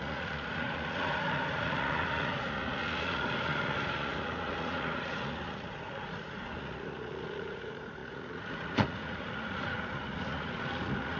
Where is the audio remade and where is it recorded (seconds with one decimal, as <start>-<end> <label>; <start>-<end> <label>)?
0.0-11.2 remade